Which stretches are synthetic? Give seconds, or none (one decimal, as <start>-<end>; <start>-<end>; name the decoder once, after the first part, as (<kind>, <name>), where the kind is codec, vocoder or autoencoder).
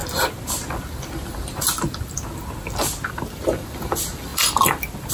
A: 3.1-5.1 (vocoder, BigVGAN v2)